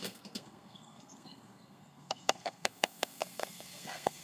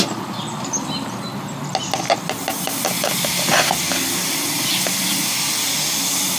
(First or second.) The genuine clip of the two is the second